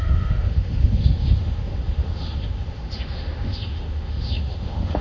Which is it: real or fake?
fake